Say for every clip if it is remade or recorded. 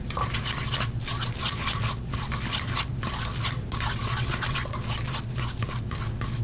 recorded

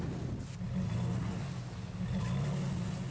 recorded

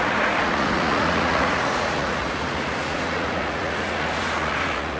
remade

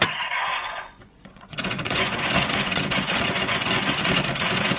remade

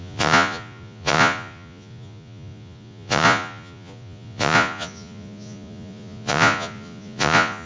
remade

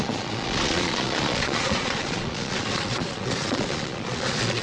remade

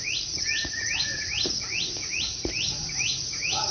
remade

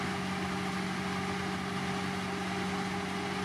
recorded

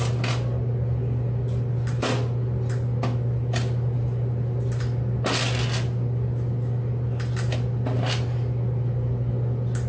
recorded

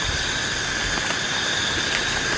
recorded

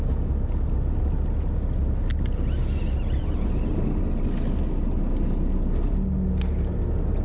recorded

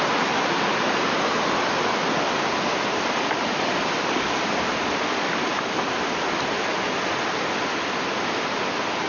recorded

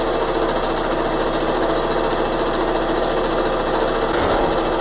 recorded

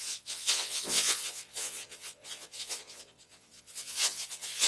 remade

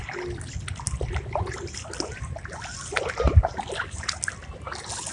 recorded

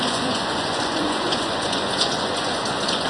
remade